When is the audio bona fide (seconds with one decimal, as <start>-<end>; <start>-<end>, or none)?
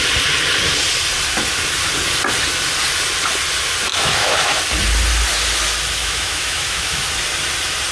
0.0-3.9; 4.6-6.0; 7.0-7.9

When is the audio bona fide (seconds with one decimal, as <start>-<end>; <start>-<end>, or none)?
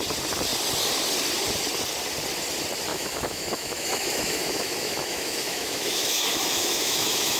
0.0-2.9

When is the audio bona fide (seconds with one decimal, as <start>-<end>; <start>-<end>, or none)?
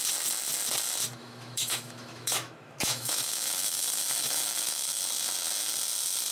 0.0-1.2; 5.0-6.3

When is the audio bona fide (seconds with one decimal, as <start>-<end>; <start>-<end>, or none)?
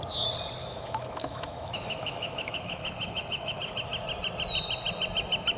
0.0-0.6; 3.6-5.6